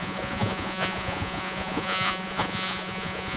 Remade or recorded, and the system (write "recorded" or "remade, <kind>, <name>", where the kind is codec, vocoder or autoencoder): remade, vocoder, Vocos